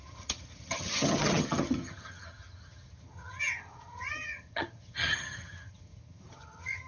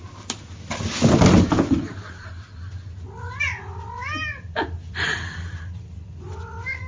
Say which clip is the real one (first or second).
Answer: second